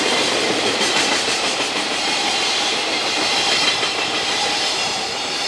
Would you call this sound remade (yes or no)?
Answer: yes